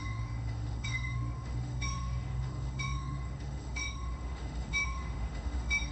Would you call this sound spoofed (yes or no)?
yes